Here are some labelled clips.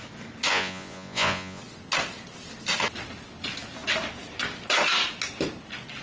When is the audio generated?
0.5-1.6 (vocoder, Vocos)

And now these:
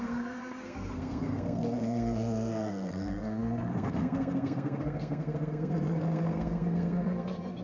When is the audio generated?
0.0-7.6 (codec, SNAC)

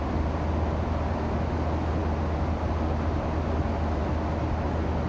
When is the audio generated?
none

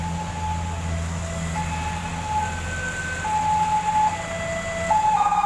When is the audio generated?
none

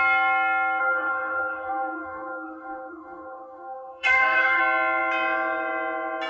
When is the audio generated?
0.8-4.6 (codec, DAC)

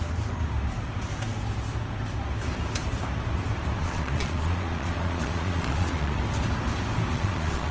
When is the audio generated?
3.8-6.2 (vocoder, Vocos); 7.1-7.7

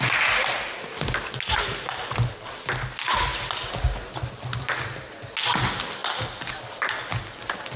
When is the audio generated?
none

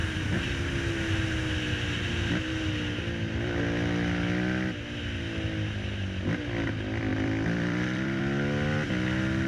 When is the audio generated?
0.0-0.7 (vocoder, BigVGAN v2); 7.1-8.2